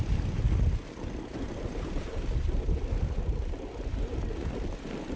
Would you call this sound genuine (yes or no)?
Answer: yes